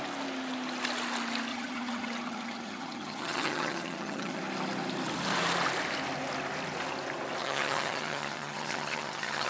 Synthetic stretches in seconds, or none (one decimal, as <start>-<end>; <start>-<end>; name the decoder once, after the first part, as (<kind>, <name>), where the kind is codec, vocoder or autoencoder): 1.5-4.4 (vocoder, HiFi-GAN); 7.4-9.5